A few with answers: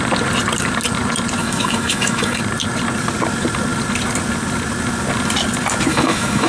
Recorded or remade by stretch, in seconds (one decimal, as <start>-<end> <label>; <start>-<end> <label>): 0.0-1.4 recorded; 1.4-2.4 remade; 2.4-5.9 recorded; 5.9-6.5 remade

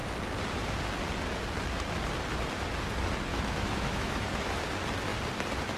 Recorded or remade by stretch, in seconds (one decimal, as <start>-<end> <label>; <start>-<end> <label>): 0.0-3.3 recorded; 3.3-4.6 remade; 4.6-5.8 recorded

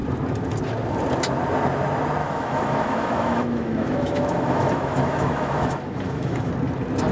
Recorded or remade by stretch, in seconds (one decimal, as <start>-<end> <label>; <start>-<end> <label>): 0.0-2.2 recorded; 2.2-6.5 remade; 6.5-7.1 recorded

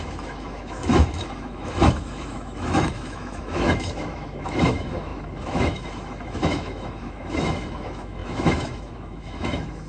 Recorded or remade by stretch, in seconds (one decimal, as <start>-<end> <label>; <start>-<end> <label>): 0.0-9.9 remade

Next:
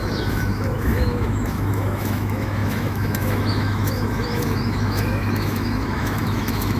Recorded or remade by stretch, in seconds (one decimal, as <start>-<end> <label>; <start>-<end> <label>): 0.0-6.8 remade

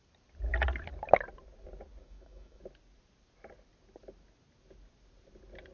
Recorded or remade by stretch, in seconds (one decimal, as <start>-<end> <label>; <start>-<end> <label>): 0.0-2.0 recorded; 2.0-2.6 remade; 2.6-5.7 recorded